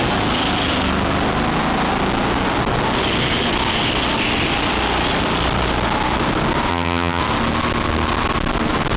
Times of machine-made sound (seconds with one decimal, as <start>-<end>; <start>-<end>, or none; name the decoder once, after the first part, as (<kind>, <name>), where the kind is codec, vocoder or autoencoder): 6.7-7.2 (vocoder, HiFi-GAN)